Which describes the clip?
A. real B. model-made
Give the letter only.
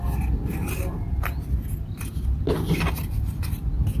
A